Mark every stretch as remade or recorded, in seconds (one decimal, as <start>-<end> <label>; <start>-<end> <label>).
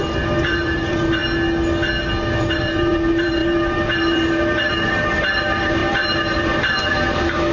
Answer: 0.0-1.2 remade; 1.2-2.4 recorded; 2.4-7.5 remade